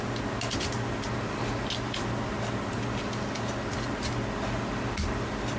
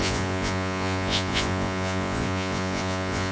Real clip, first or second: first